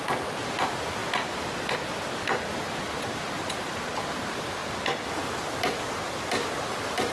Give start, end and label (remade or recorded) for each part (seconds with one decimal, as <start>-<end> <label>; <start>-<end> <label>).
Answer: 0.0-1.0 remade; 1.0-2.5 recorded; 2.5-4.6 remade; 4.6-6.5 recorded; 6.5-7.1 remade